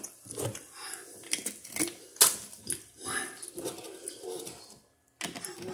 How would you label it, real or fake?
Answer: real